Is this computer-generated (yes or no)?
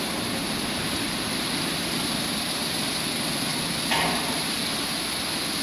no